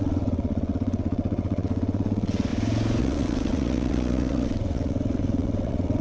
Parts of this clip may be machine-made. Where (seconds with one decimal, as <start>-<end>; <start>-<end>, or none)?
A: 0.0-2.5; 3.0-6.0